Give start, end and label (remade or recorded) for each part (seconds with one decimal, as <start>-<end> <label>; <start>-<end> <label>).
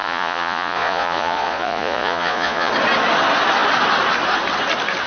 0.0-2.7 remade; 2.7-5.1 recorded